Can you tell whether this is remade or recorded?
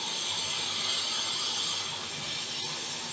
recorded